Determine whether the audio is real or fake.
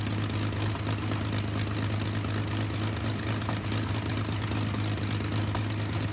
real